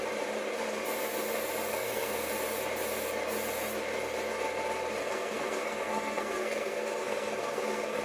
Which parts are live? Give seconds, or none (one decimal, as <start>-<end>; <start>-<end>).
0.0-1.7; 2.3-5.0